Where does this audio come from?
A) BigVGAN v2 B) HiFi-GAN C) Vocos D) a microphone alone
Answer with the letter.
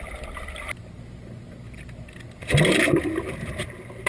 D